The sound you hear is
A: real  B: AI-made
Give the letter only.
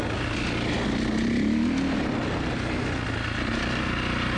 A